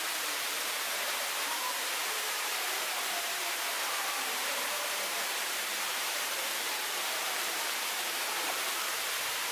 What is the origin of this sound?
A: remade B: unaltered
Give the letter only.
A